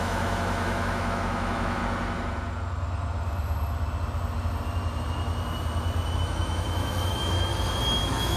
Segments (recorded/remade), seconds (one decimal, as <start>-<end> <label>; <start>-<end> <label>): 0.0-1.8 remade; 1.8-6.2 recorded; 6.2-7.5 remade; 7.5-8.0 recorded; 8.0-8.4 remade